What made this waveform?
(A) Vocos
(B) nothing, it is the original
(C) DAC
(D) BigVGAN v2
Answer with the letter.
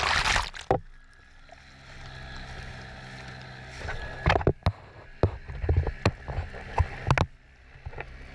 B